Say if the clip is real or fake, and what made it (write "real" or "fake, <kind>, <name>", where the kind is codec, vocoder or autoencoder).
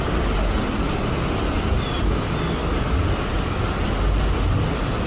real